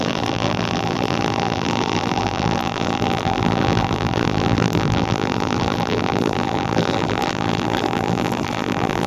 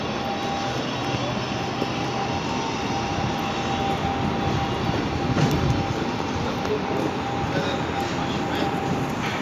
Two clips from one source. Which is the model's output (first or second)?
first